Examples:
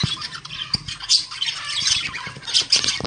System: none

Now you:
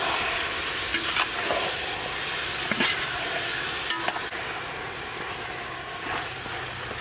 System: none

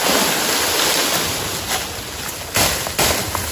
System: none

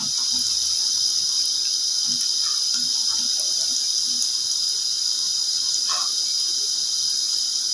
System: none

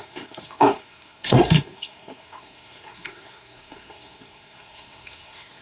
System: codec, SNAC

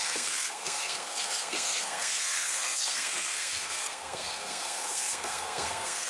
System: codec, SNAC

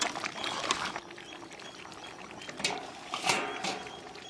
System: none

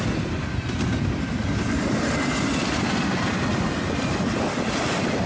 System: none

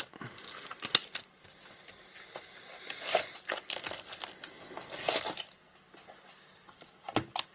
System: none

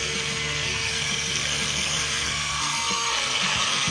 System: codec, SNAC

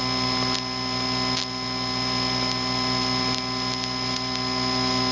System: none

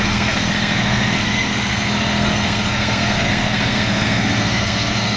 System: codec, SNAC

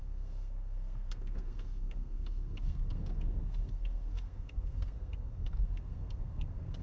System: codec, SNAC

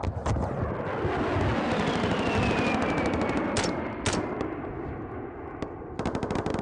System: none